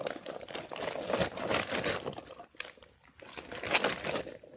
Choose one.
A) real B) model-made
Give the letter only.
A